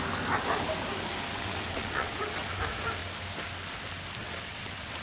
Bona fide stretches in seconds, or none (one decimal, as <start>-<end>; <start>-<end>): 0.0-1.3; 2.6-4.2

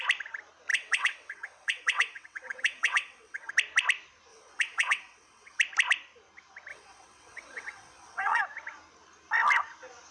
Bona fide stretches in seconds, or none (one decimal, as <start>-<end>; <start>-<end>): 0.0-0.7; 3.5-4.3; 5.6-6.7; 8.4-10.1